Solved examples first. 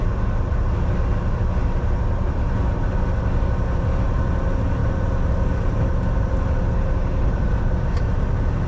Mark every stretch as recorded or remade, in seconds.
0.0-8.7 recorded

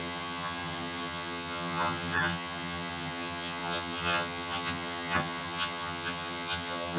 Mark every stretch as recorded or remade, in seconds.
0.0-7.0 remade

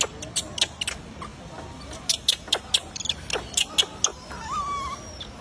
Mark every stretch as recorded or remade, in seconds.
0.0-4.1 recorded; 4.1-4.6 remade; 4.6-5.4 recorded

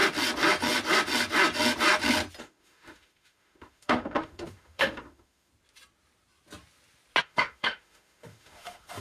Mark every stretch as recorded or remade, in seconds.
0.0-2.4 recorded; 2.4-5.5 remade; 5.5-7.2 recorded; 7.2-9.0 remade

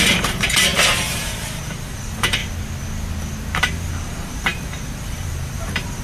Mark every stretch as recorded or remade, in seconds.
0.0-2.4 remade; 2.4-3.6 recorded; 3.6-6.0 remade

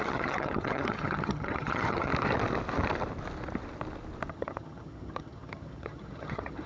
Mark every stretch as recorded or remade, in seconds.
0.0-2.1 remade; 2.1-4.3 recorded; 4.3-6.7 remade